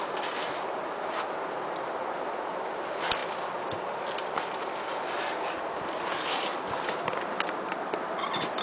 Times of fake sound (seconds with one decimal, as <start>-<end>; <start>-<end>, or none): none